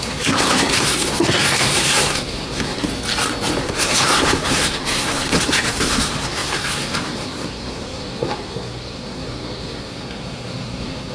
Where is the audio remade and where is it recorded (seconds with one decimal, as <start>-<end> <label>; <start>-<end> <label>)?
0.0-2.9 remade; 2.9-3.6 recorded; 3.6-11.1 remade